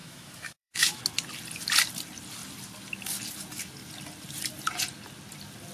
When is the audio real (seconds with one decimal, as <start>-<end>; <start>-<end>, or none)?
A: 1.0-5.7